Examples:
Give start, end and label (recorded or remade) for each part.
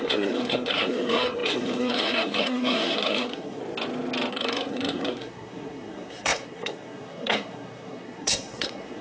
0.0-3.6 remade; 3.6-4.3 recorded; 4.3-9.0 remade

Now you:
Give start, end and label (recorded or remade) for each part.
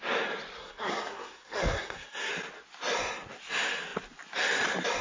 0.0-0.6 recorded; 0.6-2.3 remade; 2.3-5.0 recorded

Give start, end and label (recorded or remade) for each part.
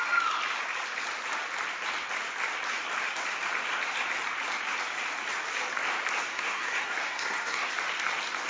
0.0-6.3 recorded; 6.3-7.7 remade; 7.7-8.5 recorded